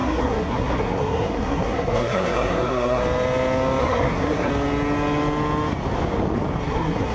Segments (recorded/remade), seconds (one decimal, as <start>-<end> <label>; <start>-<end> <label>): 0.0-3.0 remade; 3.0-3.8 recorded; 3.8-4.5 remade; 4.5-6.6 recorded; 6.6-7.1 remade

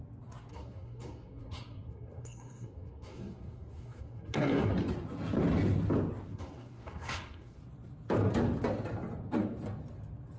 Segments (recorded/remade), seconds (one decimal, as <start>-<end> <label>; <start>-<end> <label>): 0.0-0.5 recorded; 0.5-4.7 remade; 4.7-6.3 recorded; 6.3-7.6 remade; 7.6-10.4 recorded

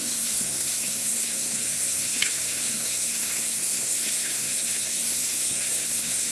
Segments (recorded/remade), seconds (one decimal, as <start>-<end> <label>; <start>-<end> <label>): 0.0-6.3 remade

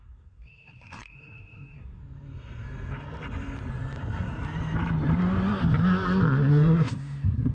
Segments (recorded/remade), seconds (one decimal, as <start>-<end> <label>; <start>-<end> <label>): 0.0-2.0 remade; 2.0-6.5 recorded; 6.5-7.5 remade